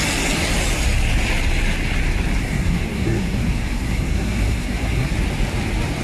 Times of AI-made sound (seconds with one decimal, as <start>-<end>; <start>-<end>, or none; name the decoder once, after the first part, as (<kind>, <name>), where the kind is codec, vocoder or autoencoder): 2.4-5.1 (codec, SNAC)

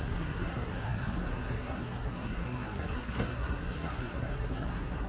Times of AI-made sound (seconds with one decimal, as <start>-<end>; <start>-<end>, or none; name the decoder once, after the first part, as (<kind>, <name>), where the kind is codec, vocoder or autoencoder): 0.0-5.1 (codec, SNAC)